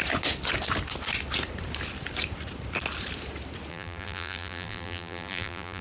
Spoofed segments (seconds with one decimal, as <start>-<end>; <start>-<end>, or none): 3.7-5.8